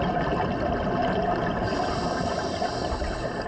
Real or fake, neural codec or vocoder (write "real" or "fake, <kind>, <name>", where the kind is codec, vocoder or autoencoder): real